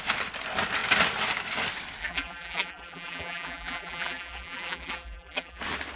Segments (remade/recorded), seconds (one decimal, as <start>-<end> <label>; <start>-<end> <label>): 0.0-2.0 recorded; 2.0-5.6 remade; 5.6-6.0 recorded